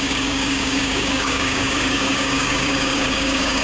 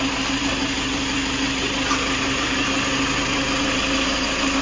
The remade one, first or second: first